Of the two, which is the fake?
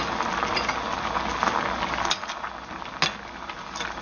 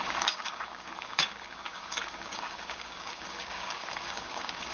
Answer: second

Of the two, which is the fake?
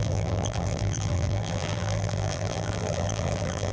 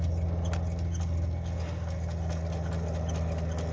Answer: first